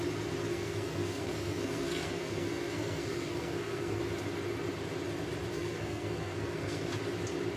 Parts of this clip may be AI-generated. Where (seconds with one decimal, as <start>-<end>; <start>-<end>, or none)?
0.4-4.0; 5.5-7.0